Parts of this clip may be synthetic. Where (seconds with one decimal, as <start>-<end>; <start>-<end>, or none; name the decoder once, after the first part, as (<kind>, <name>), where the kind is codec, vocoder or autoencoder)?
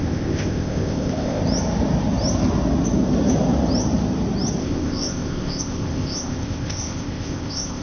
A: 0.0-1.4 (codec, ZipCodec); 4.6-7.8